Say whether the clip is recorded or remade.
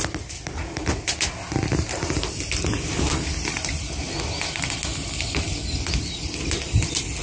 recorded